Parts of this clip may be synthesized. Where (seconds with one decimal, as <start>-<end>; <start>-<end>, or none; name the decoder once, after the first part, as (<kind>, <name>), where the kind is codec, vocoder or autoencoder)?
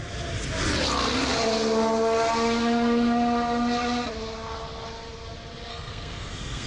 5.7-6.7 (codec, SNAC)